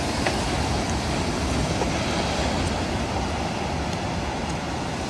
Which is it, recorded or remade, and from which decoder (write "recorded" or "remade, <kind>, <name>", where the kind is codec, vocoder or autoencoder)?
recorded